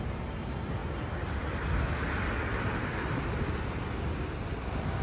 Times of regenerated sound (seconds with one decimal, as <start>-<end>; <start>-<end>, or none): none